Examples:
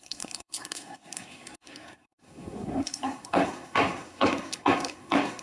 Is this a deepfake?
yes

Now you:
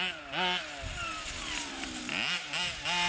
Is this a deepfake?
no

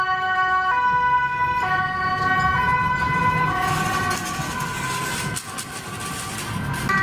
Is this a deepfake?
no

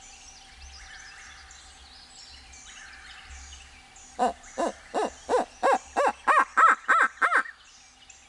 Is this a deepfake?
no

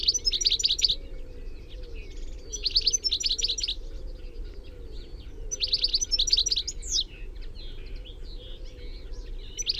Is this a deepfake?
no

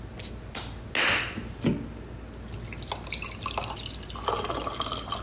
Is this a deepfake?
no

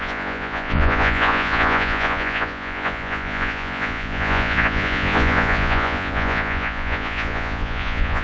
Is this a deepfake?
yes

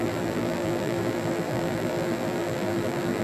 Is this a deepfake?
yes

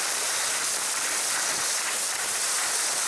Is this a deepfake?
no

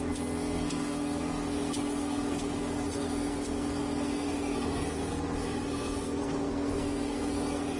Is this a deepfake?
yes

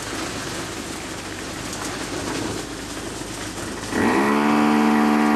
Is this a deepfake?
no